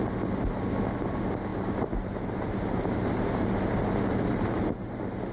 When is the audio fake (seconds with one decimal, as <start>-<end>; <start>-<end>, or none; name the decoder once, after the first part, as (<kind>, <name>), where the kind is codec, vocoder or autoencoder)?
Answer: 1.5-4.7 (vocoder, BigVGAN v2)